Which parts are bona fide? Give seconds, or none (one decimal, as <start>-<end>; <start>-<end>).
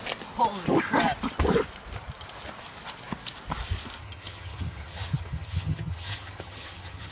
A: 0.0-4.0